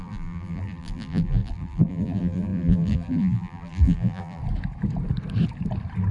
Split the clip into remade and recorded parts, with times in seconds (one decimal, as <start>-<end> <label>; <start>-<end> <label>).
0.0-4.4 remade; 4.4-6.1 recorded